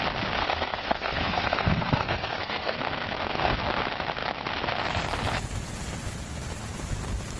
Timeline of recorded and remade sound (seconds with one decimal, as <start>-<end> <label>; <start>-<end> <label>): 0.0-0.4 recorded; 0.4-3.6 remade; 3.6-7.4 recorded